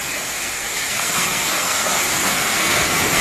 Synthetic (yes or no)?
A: yes